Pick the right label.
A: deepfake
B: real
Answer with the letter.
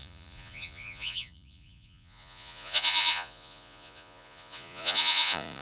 A